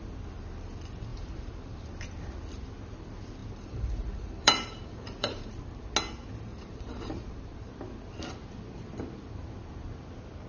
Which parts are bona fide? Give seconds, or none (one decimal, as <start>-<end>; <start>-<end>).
0.0-1.1; 2.1-3.4; 5.5-6.5; 7.7-10.5